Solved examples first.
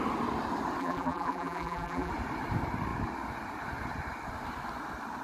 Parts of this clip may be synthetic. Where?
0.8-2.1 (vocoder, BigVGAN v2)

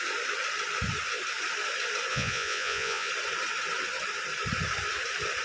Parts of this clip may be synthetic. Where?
2.1-3.1 (vocoder, Vocos)

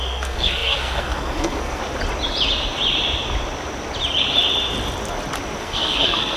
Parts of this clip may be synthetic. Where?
0.0-1.8 (codec, SNAC); 5.6-6.4

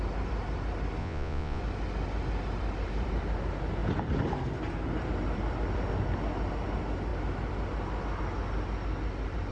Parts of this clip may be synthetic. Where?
1.0-1.6 (vocoder, Vocos)